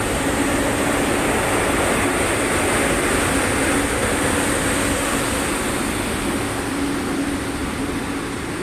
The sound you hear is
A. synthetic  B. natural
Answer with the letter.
B